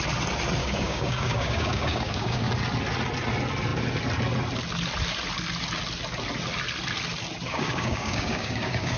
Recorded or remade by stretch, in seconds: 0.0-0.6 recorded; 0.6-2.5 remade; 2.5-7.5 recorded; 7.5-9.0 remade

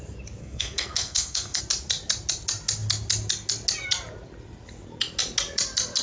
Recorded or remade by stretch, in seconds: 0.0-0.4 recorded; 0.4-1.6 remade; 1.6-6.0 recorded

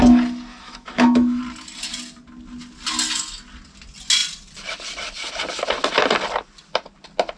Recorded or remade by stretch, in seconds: 0.0-0.5 recorded; 0.5-1.4 remade; 1.4-7.4 recorded